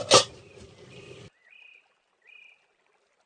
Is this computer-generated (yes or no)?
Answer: no